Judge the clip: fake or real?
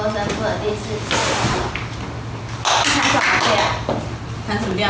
real